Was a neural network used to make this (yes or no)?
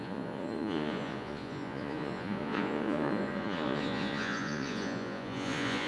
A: yes